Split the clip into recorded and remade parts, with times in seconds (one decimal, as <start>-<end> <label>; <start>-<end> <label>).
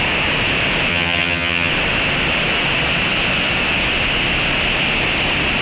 0.0-0.9 recorded; 0.9-1.7 remade; 1.7-5.6 recorded